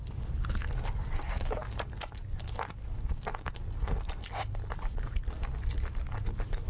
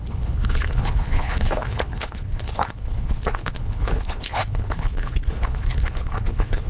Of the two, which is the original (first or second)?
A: first